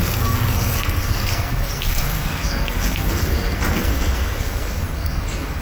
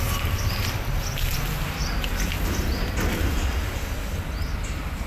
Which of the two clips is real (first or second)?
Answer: second